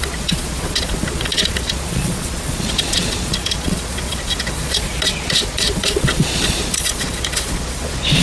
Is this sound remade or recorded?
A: remade